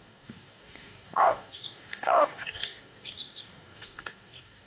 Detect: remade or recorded remade